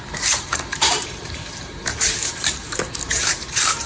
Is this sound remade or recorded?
remade